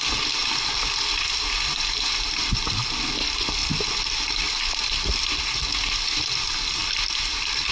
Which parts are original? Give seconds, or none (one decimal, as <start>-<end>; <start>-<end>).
0.0-7.7